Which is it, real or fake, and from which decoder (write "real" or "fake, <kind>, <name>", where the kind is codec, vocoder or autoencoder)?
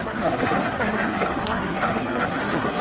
fake, codec, SNAC